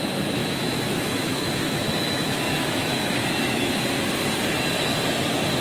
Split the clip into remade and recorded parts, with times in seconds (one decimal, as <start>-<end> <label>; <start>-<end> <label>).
0.0-0.4 recorded; 0.4-3.8 remade; 3.8-5.6 recorded